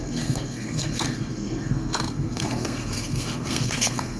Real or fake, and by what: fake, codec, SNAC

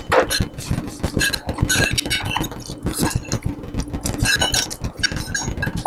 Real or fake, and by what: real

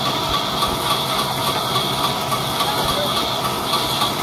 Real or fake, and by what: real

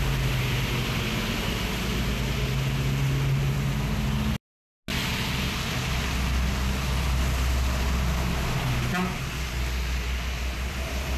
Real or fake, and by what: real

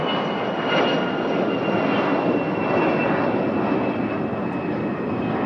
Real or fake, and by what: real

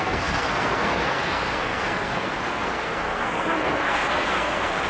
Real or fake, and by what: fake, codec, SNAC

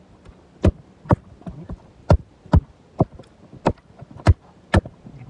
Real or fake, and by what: real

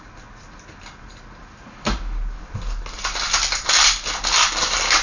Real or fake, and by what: real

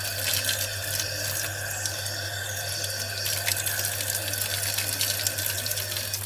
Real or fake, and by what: real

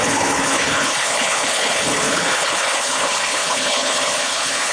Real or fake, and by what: fake, codec, HILCodec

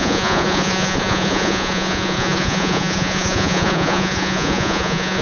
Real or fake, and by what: fake, vocoder, Vocos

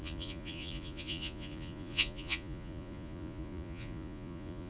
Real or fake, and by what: fake, vocoder, Vocos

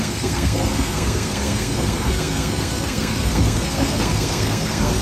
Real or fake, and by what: fake, codec, SNAC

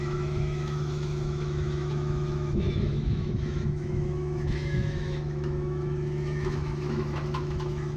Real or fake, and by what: fake, autoencoder, DAC-VAE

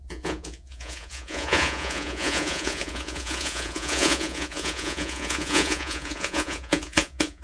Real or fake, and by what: fake, vocoder, Vocos